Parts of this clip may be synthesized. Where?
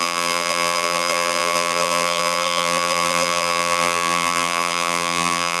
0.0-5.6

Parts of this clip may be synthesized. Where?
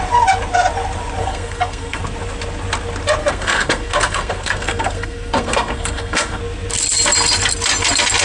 1.2-2.0; 3.2-6.4